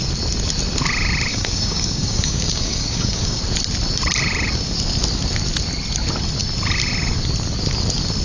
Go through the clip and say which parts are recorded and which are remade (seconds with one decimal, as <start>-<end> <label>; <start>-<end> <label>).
0.0-1.3 recorded; 1.3-3.4 remade; 3.4-8.2 recorded